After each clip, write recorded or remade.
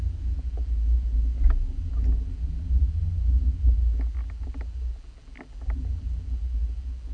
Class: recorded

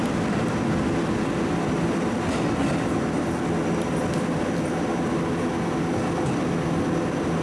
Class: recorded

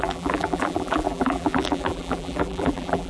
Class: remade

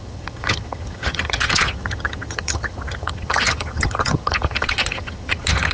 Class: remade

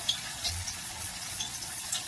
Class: remade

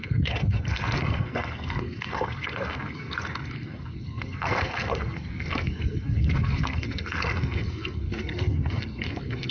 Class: remade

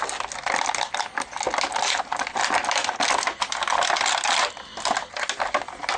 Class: recorded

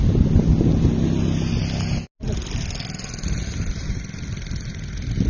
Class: recorded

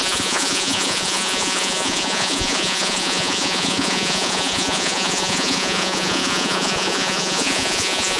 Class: remade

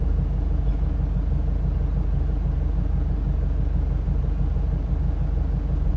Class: recorded